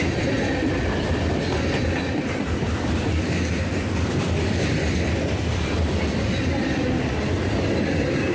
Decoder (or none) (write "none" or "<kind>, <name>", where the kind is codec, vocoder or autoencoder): vocoder, BigVGAN v2